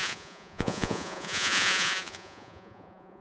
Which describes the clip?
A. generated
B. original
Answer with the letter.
A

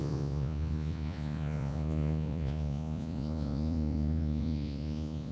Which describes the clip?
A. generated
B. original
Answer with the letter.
A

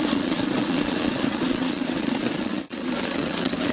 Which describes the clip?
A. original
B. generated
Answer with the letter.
B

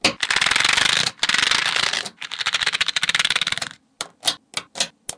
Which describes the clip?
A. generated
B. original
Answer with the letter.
B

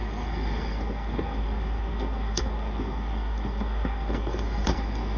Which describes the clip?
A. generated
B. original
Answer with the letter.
A